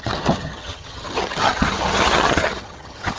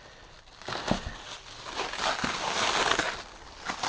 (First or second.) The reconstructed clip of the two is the first